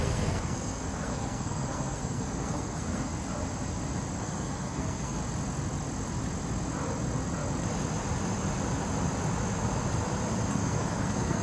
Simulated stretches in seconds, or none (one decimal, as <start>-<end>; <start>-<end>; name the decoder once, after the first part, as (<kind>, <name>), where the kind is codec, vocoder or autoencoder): 0.0-3.1 (codec, SNAC); 4.2-5.2; 10.5-11.4